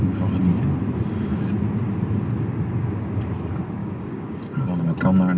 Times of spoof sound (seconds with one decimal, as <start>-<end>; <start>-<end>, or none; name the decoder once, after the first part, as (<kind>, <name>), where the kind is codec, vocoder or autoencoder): 3.8-4.8 (codec, DAC)